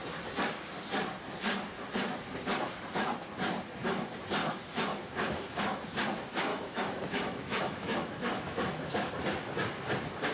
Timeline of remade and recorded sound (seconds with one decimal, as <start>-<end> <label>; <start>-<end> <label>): 0.0-4.4 recorded; 4.4-5.8 remade; 5.8-6.5 recorded; 6.5-9.1 remade; 9.1-10.3 recorded